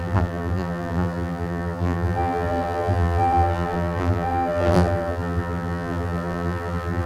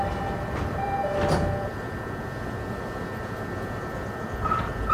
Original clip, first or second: second